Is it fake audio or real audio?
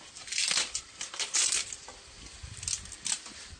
real